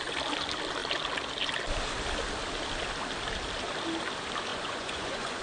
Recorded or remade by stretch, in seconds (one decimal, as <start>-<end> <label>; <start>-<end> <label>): 0.0-4.5 recorded; 4.5-5.4 remade